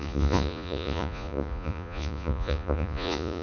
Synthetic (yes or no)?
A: yes